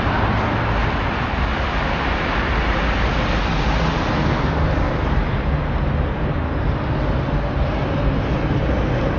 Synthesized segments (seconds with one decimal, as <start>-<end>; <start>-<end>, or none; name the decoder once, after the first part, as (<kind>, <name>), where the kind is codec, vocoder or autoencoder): none